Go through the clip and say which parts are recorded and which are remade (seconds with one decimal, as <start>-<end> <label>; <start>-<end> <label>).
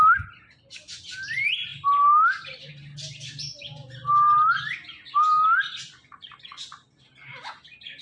0.0-8.0 recorded